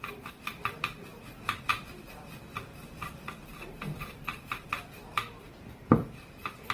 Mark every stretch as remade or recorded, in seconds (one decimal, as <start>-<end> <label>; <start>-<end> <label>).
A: 0.0-6.7 remade